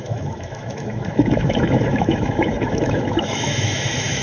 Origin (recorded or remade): remade